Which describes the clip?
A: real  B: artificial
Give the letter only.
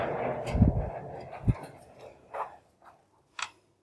A